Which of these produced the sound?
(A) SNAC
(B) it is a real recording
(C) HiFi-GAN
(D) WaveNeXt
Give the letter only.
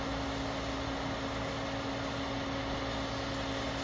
B